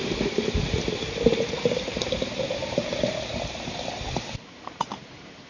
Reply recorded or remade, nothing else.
remade